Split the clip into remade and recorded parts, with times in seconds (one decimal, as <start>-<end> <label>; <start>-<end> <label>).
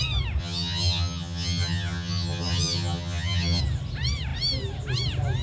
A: 0.0-0.4 recorded; 0.4-3.6 remade; 3.6-5.4 recorded